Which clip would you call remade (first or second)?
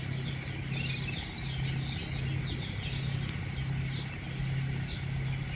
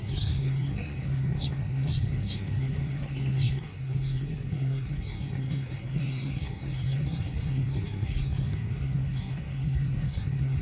second